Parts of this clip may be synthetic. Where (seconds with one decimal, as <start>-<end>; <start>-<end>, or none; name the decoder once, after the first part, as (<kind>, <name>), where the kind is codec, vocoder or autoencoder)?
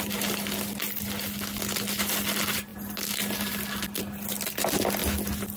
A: none